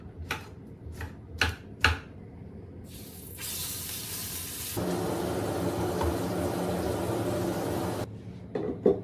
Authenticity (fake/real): real